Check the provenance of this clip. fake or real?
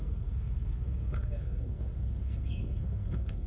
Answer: fake